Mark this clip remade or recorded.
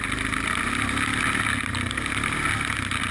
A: recorded